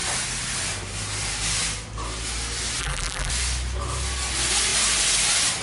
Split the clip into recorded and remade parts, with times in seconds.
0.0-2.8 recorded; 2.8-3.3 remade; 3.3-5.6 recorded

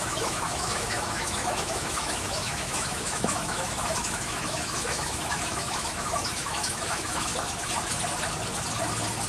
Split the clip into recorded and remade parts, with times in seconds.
0.0-7.3 remade; 7.3-9.3 recorded

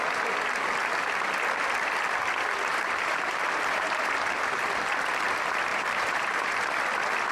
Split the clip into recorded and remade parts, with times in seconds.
0.0-2.7 recorded; 2.7-4.1 remade; 4.1-5.7 recorded; 5.7-6.6 remade; 6.6-7.3 recorded

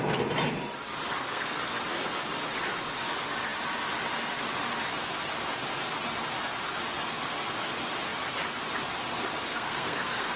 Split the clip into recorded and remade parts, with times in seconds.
0.0-1.3 recorded; 1.3-1.8 remade; 1.8-9.5 recorded; 9.5-10.4 remade